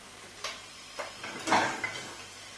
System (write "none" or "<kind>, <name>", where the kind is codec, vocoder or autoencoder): none